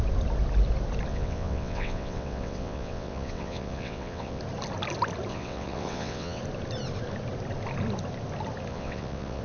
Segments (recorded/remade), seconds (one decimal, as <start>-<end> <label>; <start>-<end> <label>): 0.0-1.1 recorded; 1.1-4.4 remade; 4.4-5.3 recorded; 5.3-6.4 remade; 6.4-8.7 recorded; 8.7-9.4 remade